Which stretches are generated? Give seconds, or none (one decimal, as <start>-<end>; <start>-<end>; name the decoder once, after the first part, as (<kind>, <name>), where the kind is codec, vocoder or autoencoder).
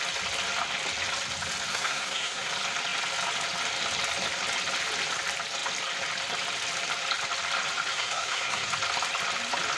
1.7-2.5 (codec, SNAC); 7.9-8.7